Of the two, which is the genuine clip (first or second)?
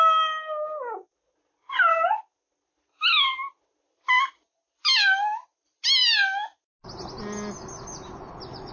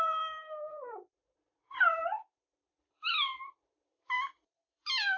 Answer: first